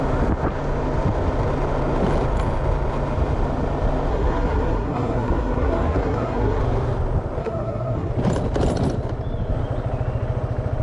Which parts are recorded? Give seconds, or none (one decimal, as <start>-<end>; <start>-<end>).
0.0-4.1; 6.6-7.4; 8.1-10.8